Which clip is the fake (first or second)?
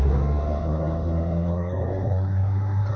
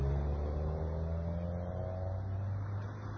first